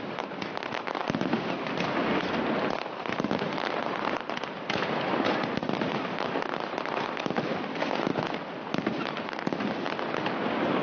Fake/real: real